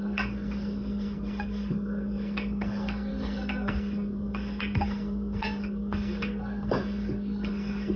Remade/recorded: remade